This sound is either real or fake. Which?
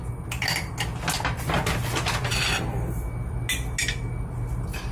real